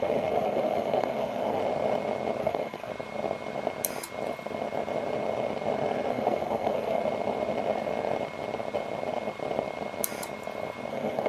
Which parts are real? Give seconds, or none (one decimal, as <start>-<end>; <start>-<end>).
1.6-2.4; 2.9-6.1; 7.0-10.9